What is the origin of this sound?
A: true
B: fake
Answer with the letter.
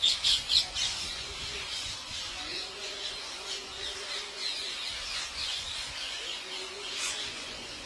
B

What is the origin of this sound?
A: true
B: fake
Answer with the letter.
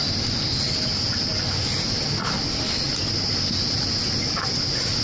A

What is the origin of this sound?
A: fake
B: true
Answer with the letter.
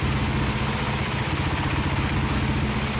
B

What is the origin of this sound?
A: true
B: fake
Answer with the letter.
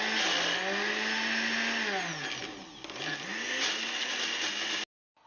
A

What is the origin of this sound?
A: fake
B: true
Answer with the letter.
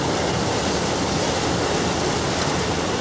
B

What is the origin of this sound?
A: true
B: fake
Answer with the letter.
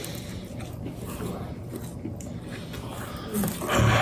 A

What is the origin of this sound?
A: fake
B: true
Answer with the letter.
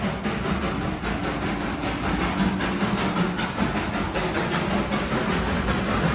B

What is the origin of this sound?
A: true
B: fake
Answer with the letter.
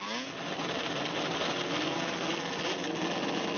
A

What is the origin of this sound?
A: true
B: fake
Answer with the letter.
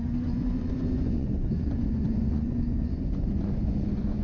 B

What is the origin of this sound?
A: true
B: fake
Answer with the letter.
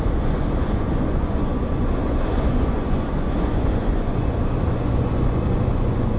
B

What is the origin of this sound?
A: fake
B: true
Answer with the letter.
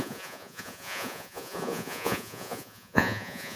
A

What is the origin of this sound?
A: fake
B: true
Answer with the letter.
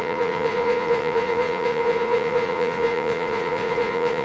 A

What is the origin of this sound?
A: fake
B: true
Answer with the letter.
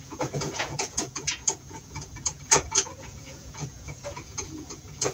A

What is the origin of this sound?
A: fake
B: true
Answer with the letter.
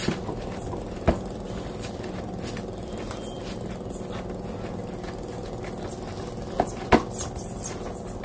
B